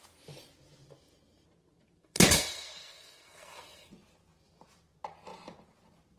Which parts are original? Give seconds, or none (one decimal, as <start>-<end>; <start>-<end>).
0.0-2.0; 3.9-6.2